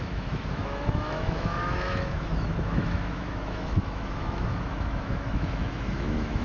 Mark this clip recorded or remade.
remade